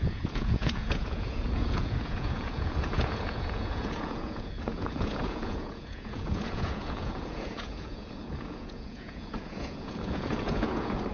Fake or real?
fake